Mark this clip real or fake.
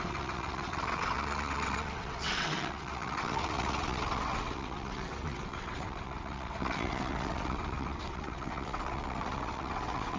fake